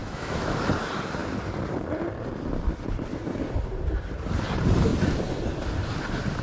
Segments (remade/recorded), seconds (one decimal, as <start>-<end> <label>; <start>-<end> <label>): 0.0-0.6 remade; 0.6-6.4 recorded

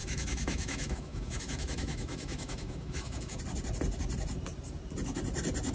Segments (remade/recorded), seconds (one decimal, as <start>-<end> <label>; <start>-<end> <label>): 0.0-3.4 remade; 3.4-5.7 recorded

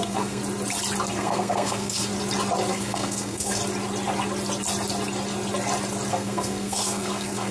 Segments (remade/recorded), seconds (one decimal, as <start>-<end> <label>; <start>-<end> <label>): 0.0-0.4 remade; 0.4-1.1 recorded; 1.1-2.1 remade; 2.1-2.7 recorded; 2.7-3.6 remade; 3.6-6.1 recorded; 6.1-7.5 remade

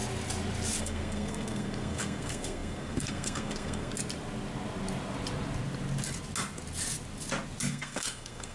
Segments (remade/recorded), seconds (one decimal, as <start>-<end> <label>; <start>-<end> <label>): 0.0-0.8 recorded; 0.8-3.9 remade; 3.9-7.7 recorded; 7.7-8.5 remade

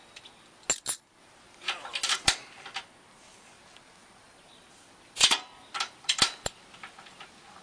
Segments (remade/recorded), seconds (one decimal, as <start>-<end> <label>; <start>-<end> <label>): 0.0-4.0 recorded; 4.0-7.6 remade